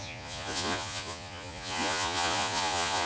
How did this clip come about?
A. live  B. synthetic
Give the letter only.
B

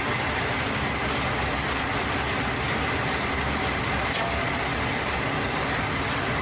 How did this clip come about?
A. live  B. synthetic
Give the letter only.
A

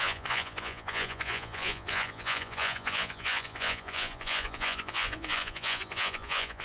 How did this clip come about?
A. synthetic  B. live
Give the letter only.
A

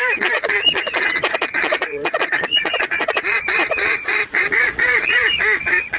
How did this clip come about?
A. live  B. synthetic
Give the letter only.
B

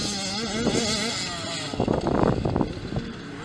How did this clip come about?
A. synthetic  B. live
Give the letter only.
B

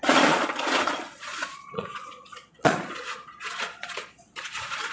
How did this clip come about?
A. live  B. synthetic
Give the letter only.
B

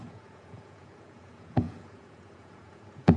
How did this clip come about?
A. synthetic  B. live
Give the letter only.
A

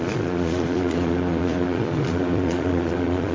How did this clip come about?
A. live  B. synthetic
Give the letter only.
B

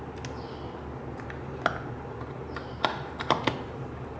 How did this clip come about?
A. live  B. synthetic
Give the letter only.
A